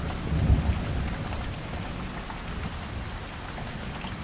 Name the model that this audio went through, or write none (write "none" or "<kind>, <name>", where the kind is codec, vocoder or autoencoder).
none